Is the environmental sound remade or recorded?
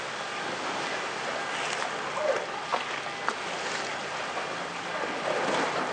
recorded